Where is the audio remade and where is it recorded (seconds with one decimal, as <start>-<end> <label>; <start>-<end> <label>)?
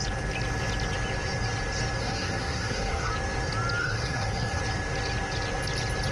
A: 0.0-2.0 recorded; 2.0-3.1 remade; 3.1-3.8 recorded; 3.8-4.6 remade; 4.6-6.1 recorded